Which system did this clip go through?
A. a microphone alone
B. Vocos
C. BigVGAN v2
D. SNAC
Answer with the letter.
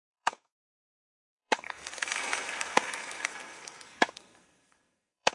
D